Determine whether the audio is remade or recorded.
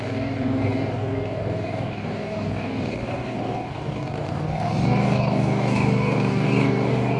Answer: remade